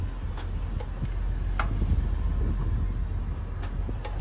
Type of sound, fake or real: real